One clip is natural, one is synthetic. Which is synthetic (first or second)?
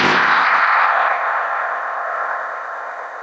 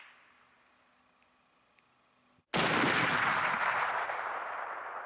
first